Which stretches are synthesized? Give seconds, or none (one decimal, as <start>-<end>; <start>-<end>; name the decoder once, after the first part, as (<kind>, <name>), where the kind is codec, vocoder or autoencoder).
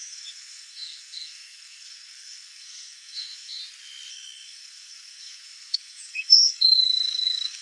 0.0-3.6 (codec, SNAC); 4.1-7.6